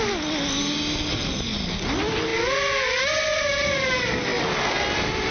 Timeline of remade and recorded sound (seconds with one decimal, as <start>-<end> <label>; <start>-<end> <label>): 0.0-5.3 recorded